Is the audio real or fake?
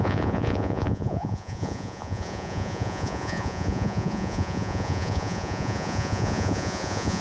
fake